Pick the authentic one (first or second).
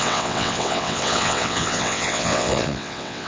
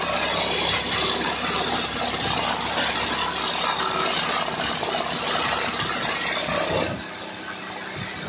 second